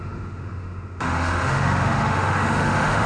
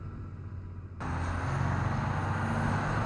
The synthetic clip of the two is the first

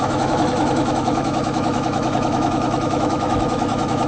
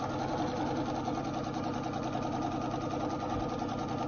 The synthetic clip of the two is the first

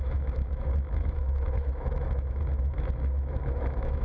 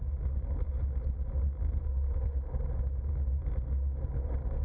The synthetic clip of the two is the first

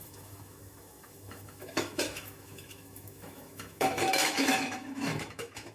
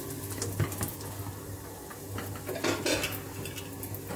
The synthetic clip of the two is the first